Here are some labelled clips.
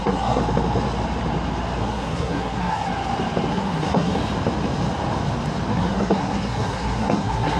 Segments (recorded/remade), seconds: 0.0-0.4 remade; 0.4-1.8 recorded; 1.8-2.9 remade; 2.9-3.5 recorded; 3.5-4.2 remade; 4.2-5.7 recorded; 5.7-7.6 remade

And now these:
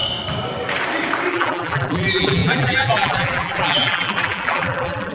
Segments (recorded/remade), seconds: 0.0-1.3 recorded; 1.3-5.1 remade

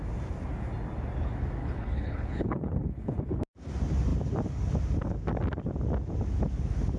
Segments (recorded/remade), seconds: 0.0-1.6 recorded; 1.6-3.4 remade; 3.4-7.0 recorded

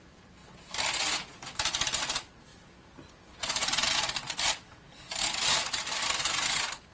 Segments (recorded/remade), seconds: 0.0-6.9 recorded

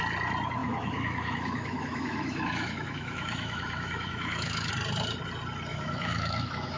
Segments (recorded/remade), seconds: 0.0-0.6 recorded; 0.6-4.7 remade; 4.7-5.7 recorded; 5.7-6.8 remade

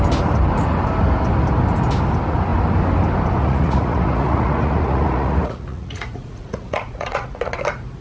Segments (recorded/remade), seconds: 0.0-3.4 recorded; 3.4-7.6 remade; 7.6-8.0 recorded